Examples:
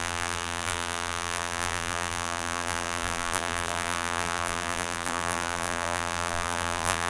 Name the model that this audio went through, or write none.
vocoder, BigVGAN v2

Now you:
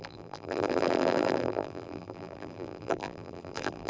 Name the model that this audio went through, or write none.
vocoder, BigVGAN v2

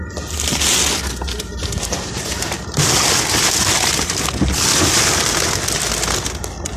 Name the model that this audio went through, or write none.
none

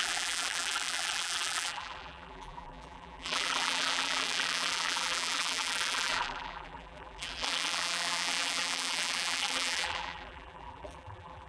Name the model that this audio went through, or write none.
vocoder, BigVGAN v2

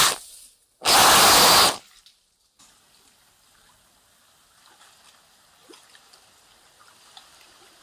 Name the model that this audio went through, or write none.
none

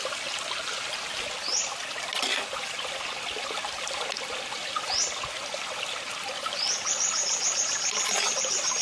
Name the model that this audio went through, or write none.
vocoder, BigVGAN v2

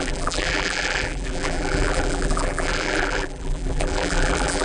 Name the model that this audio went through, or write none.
vocoder, BigVGAN v2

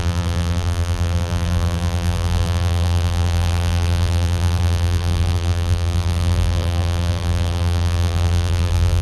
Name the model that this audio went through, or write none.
vocoder, BigVGAN v2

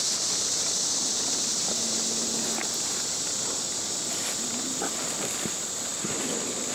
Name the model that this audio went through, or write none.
none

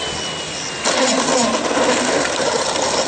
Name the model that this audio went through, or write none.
none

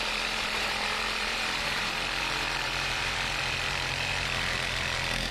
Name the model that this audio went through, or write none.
vocoder, BigVGAN v2